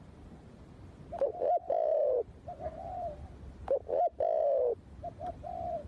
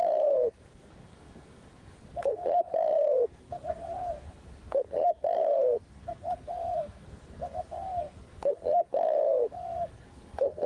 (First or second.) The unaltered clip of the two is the first